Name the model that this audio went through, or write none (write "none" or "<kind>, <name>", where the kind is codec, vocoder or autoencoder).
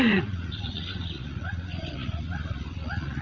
vocoder, Vocos